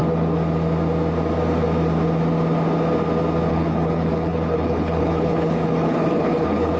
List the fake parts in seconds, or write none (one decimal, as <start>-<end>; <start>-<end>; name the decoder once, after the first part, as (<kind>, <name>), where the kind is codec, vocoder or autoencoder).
3.5-6.8 (codec, HILCodec)